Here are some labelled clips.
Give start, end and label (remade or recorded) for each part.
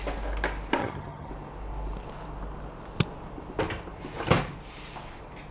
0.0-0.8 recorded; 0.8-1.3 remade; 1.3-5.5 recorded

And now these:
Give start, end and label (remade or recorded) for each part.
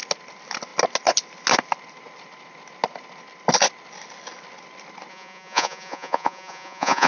0.0-5.1 recorded; 5.1-7.1 remade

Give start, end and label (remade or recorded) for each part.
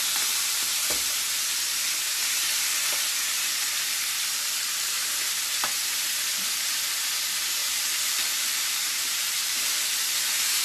0.0-7.6 recorded; 7.6-9.6 remade; 9.6-10.6 recorded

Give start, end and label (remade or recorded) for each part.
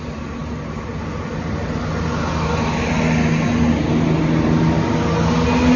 0.0-5.8 recorded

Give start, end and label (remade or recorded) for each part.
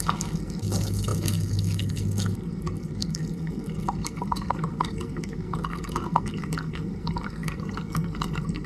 0.0-8.7 remade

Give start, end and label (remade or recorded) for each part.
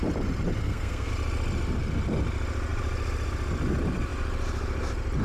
0.0-0.6 recorded; 0.6-1.1 remade; 1.1-5.2 recorded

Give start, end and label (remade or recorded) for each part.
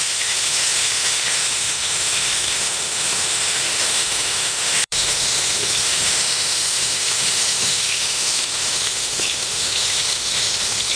0.0-11.0 remade